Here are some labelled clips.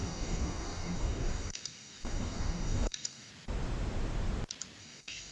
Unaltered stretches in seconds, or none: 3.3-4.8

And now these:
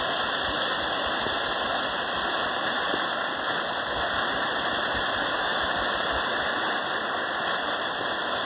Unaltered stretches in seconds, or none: 0.0-5.2; 5.7-8.4

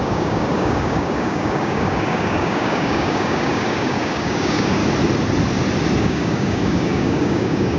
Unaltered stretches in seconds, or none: 4.8-6.0

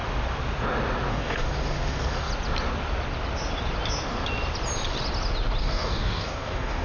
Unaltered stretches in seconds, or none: 0.0-1.1; 2.3-5.6

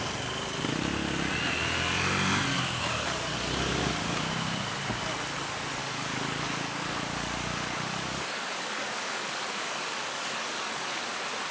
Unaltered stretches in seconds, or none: 0.0-2.5; 4.2-5.8; 11.0-11.5

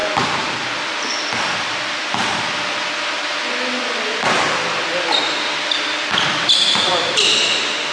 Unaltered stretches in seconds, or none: 0.0-7.9